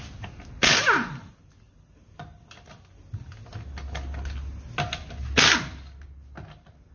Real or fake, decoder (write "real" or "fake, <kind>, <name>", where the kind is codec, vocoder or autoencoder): real